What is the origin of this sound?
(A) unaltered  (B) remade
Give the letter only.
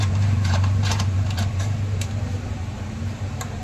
B